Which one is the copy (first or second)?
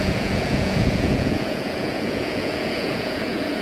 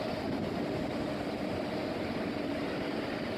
first